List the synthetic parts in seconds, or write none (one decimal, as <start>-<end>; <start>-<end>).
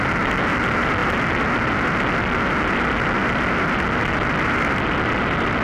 none